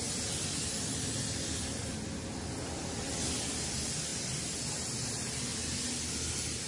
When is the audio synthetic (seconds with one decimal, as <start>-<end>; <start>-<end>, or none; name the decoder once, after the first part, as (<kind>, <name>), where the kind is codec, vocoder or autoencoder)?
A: none